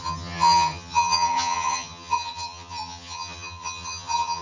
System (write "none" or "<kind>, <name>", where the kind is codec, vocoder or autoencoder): vocoder, HiFi-GAN